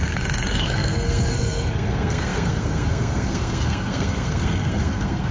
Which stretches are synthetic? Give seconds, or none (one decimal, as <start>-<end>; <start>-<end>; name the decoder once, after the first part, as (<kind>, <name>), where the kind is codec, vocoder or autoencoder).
0.0-5.3 (codec, SNAC)